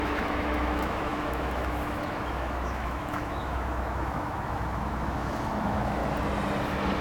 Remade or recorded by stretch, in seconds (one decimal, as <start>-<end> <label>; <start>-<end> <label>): 0.0-6.0 remade; 6.0-7.0 recorded